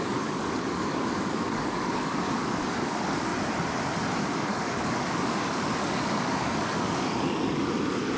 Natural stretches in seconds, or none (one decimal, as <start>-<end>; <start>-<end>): 3.3-4.2